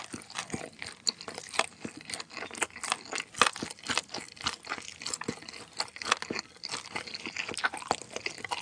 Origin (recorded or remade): recorded